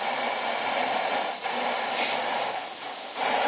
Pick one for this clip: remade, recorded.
recorded